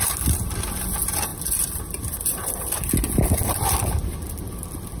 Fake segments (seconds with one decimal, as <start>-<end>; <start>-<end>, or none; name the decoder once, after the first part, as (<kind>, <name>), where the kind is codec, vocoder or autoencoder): none